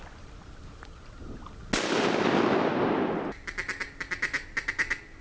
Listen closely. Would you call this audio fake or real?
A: real